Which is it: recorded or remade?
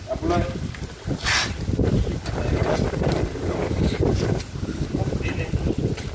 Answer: recorded